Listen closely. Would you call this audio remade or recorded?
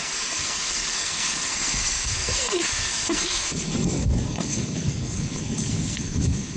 remade